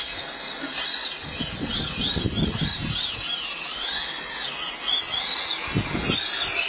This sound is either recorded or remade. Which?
recorded